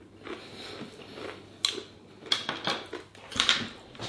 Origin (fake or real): real